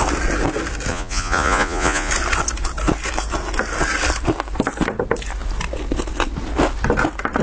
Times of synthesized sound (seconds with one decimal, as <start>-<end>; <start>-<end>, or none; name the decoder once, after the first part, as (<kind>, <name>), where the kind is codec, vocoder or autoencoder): 0.9-2.1 (vocoder, Vocos)